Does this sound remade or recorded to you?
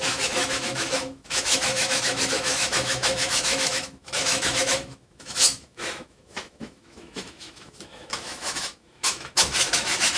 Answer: remade